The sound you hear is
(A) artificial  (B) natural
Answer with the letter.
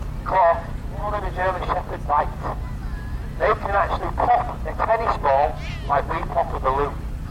B